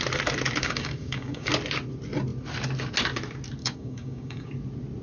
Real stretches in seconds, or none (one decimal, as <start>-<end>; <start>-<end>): 0.0-0.6; 1.5-3.6; 4.5-5.0

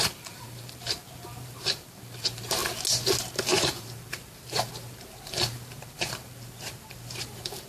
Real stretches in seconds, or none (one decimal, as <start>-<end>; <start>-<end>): 2.6-3.2

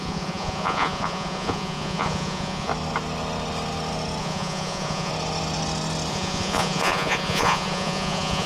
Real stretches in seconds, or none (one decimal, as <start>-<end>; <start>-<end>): 2.7-4.2; 5.1-6.1

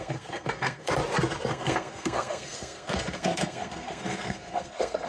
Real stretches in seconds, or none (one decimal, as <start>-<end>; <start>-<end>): 0.9-1.5

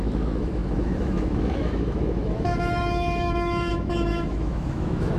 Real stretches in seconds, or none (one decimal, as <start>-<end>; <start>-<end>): none

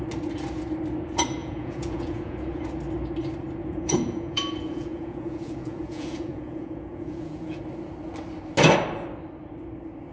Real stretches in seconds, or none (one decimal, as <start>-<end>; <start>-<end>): 0.0-1.4; 2.6-3.6; 7.6-10.1

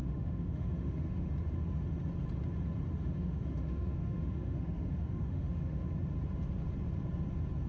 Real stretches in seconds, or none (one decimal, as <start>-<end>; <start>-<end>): 1.3-3.0; 5.9-7.7